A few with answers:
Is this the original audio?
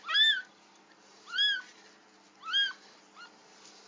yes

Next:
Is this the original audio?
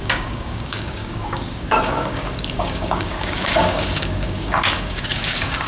no